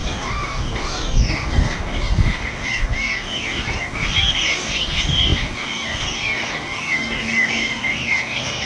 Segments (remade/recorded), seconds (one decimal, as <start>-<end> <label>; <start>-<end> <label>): 0.0-8.7 remade